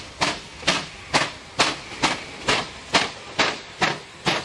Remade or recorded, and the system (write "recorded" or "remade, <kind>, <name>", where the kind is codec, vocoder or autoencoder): recorded